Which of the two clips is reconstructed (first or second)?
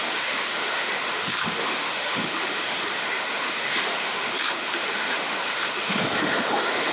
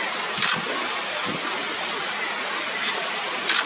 first